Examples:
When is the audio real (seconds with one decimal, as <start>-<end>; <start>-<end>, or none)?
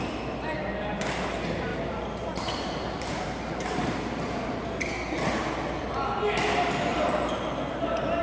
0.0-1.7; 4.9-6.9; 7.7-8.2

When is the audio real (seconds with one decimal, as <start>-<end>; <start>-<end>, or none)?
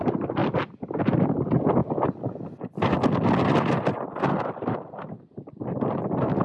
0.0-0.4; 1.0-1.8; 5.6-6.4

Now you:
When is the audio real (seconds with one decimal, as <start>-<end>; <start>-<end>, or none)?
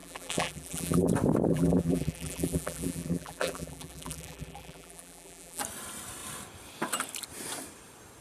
1.1-1.5; 5.6-8.2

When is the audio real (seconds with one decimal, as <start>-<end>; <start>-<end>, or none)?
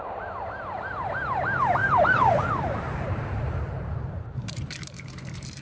0.0-1.8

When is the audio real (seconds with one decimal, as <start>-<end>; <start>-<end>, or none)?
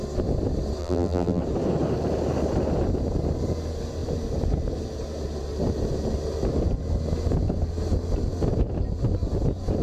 0.0-0.8; 1.4-9.8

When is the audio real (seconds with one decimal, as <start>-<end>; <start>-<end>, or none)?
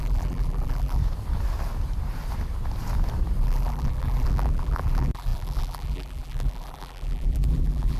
1.0-3.4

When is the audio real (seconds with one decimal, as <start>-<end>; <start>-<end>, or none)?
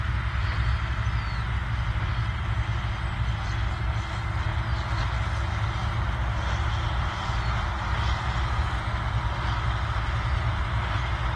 0.0-11.4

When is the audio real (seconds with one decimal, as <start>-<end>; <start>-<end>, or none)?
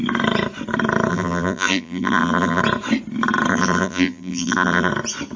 0.0-1.1; 2.6-3.5; 4.9-5.4